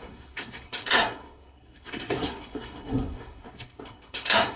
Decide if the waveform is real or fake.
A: fake